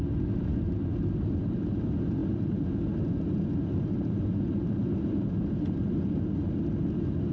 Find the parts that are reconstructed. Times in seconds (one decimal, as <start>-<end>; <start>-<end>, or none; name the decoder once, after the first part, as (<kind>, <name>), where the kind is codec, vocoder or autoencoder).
none